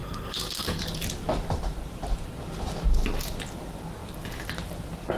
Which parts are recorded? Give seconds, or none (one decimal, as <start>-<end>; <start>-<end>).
0.8-5.2